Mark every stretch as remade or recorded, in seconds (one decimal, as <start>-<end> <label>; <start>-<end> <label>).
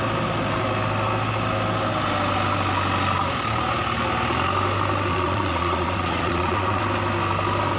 0.0-5.1 recorded; 5.1-6.8 remade; 6.8-7.8 recorded